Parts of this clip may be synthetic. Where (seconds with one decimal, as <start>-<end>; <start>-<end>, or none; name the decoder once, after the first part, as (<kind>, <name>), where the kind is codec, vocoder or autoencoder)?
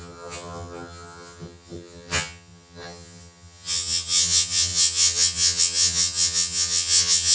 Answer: 0.0-7.3 (vocoder, HiFi-GAN)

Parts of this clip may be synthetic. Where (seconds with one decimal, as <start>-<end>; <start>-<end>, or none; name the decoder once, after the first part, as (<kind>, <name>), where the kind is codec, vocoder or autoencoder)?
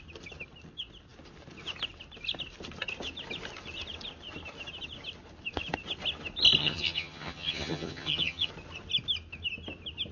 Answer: 6.6-8.5 (vocoder, HiFi-GAN)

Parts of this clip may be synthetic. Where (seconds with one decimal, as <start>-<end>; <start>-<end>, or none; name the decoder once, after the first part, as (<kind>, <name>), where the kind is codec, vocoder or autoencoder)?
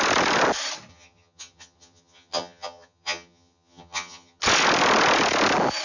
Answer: 0.9-4.4 (vocoder, HiFi-GAN)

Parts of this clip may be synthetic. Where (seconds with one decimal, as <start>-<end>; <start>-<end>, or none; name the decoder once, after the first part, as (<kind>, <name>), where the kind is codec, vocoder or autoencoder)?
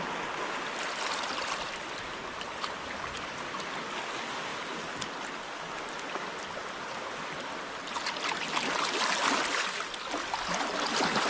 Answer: none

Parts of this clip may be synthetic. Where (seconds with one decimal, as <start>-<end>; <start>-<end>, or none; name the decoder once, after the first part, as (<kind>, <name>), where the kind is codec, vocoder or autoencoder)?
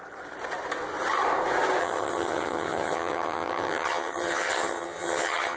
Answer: 1.8-5.6 (vocoder, HiFi-GAN)